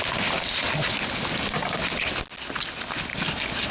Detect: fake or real real